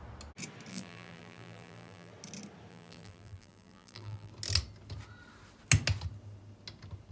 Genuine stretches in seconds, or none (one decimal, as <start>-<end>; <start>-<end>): 0.0-0.7; 2.1-2.7; 4.3-7.1